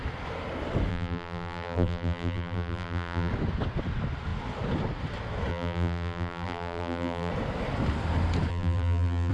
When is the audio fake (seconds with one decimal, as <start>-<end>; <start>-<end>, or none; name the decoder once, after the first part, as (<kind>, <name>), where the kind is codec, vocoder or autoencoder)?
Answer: 0.9-3.3 (vocoder, BigVGAN v2); 5.5-7.3; 8.5-9.3